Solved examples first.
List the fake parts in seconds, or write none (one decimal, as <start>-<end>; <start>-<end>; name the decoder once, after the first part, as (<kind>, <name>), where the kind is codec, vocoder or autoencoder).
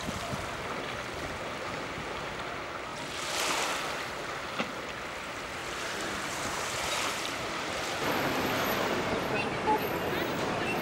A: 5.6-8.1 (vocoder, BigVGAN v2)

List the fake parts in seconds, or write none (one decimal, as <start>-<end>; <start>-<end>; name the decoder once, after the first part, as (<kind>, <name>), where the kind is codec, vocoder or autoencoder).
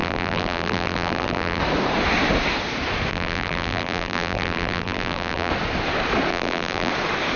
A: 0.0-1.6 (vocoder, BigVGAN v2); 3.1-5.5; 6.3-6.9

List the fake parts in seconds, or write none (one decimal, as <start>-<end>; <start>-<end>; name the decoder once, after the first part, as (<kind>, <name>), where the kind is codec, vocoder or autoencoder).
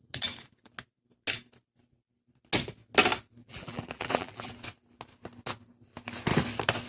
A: 3.4-4.5 (vocoder, BigVGAN v2)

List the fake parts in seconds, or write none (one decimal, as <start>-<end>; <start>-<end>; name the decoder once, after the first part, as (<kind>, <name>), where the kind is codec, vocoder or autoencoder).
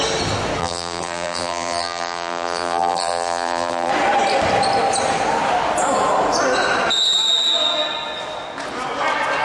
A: 0.6-3.9 (vocoder, BigVGAN v2)